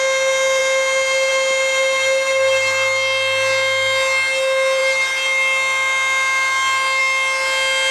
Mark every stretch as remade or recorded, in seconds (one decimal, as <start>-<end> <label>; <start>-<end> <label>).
0.0-7.9 recorded